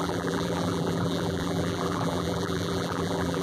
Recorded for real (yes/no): no